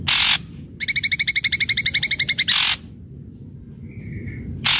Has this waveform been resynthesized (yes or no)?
no